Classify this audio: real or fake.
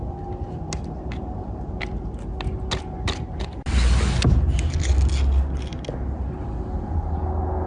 real